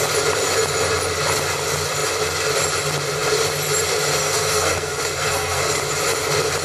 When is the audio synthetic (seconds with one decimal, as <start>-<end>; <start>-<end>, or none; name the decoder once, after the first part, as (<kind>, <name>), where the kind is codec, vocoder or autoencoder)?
4.2-5.8 (codec, SNAC)